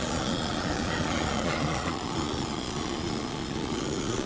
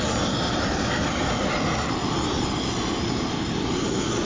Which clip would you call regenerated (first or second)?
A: first